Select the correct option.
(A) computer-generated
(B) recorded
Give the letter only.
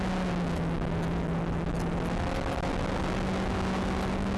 B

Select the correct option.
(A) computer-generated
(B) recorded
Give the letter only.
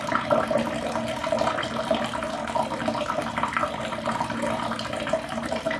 B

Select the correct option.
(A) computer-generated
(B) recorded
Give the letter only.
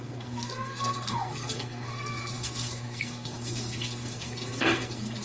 A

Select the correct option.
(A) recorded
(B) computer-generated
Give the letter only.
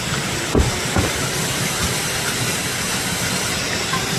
A